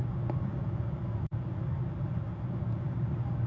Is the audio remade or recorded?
recorded